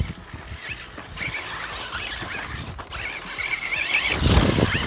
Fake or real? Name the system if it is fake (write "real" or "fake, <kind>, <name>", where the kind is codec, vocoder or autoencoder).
real